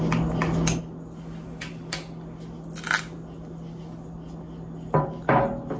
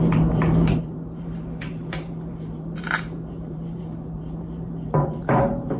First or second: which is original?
first